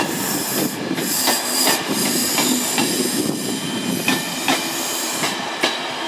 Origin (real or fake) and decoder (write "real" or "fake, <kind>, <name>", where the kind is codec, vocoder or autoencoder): fake, vocoder, BigVGAN v2